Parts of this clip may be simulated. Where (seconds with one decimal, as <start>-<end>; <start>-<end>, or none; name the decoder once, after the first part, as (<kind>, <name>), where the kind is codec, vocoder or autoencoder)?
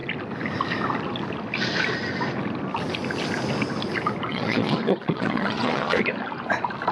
4.3-6.0 (vocoder, Vocos)